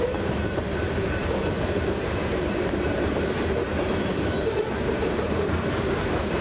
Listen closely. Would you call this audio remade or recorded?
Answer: remade